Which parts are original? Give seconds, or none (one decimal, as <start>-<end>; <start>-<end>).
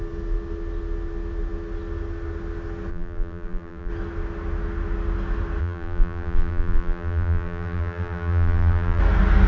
0.0-2.9; 3.9-5.6; 9.0-9.5